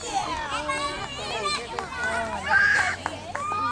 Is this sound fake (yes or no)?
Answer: no